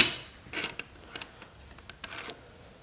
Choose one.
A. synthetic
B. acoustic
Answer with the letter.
B